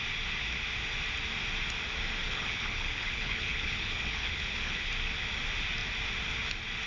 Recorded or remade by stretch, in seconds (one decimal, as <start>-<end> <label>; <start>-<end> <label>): 0.0-2.2 recorded; 2.2-4.9 remade; 4.9-6.9 recorded